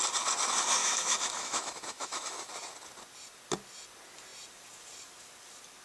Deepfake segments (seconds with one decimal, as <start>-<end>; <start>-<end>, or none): 0.8-2.5